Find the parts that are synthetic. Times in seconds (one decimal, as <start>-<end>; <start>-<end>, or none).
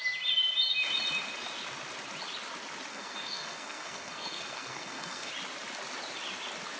2.9-5.3